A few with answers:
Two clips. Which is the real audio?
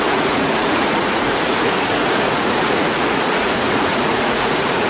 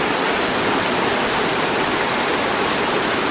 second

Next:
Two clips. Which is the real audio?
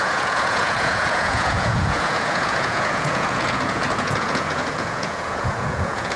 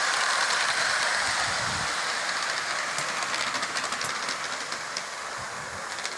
second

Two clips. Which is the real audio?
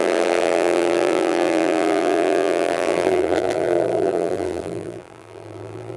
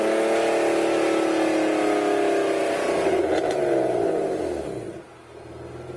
second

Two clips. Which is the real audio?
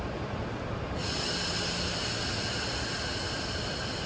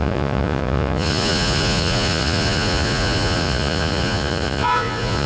first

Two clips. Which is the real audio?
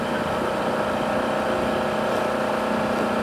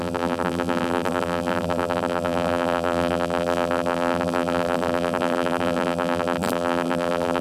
first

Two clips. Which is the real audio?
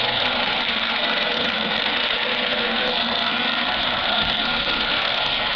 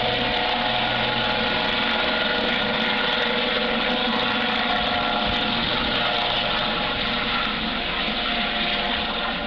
second